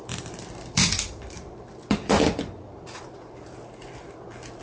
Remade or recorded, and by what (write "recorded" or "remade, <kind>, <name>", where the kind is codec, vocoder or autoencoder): remade, vocoder, BigVGAN v2